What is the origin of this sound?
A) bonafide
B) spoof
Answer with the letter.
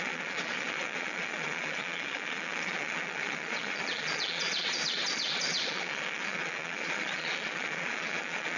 B